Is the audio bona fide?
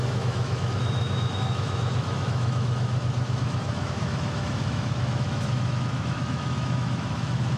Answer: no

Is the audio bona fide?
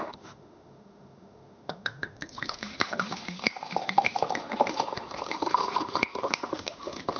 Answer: no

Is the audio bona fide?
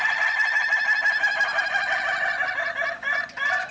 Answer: yes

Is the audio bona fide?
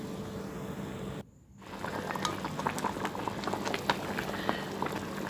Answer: yes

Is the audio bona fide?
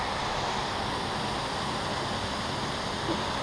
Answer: yes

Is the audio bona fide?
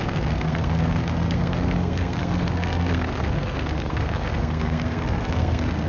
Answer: no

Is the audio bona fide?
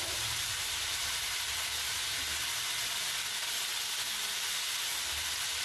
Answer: yes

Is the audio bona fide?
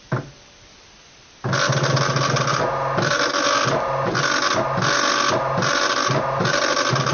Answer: yes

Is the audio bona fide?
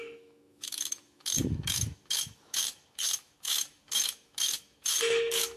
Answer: no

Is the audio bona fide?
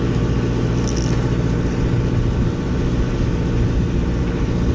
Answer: yes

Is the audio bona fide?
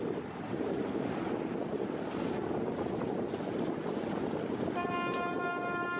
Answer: yes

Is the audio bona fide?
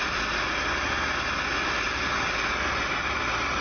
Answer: yes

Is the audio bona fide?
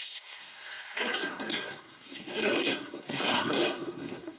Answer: no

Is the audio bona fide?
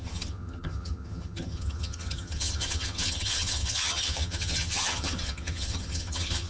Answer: no